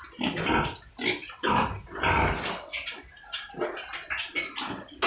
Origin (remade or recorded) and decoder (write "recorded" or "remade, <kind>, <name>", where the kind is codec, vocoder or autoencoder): recorded